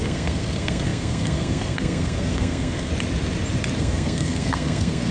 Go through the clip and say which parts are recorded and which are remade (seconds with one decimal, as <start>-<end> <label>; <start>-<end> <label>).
0.0-2.9 remade; 2.9-3.8 recorded; 3.8-5.1 remade